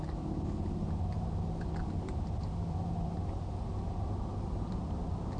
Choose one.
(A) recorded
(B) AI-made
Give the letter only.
A